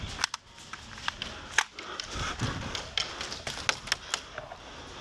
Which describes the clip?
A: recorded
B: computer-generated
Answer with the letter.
A